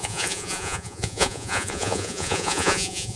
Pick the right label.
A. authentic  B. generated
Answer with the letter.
B